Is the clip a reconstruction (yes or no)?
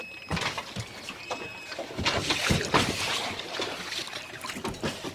no